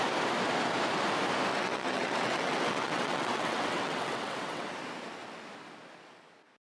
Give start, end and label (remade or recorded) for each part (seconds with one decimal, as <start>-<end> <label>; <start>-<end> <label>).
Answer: 0.0-1.5 recorded; 1.5-4.7 remade; 4.7-6.7 recorded